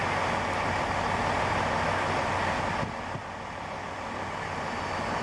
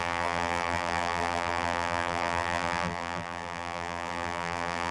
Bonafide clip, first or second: first